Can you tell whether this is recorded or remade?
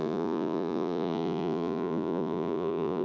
remade